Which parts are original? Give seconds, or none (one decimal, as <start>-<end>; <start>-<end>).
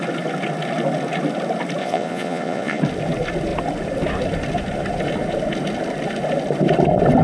0.0-1.8; 2.8-7.2